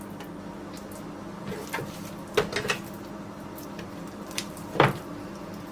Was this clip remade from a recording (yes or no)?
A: no